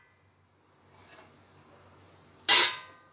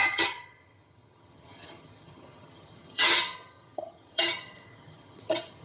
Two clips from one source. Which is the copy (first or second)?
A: second